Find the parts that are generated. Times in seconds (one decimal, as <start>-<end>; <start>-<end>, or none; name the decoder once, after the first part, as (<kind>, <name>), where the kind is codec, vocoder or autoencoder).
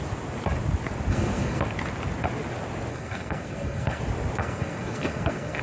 1.1-1.6 (codec, SNAC); 2.9-4.0; 4.4-5.6